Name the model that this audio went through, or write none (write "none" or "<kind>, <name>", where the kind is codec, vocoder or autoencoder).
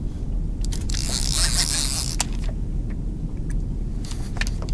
none